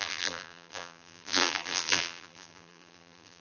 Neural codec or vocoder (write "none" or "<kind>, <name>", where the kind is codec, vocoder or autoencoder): vocoder, BigVGAN v2